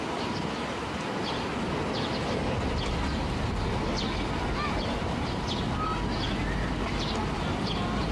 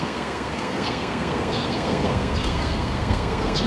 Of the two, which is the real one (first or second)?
first